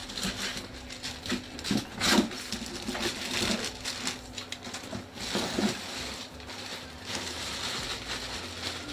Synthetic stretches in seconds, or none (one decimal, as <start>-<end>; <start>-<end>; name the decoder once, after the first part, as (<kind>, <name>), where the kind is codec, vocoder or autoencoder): 6.7-7.6 (vocoder, BigVGAN v2)